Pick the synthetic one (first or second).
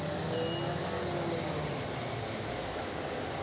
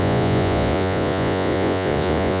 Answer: second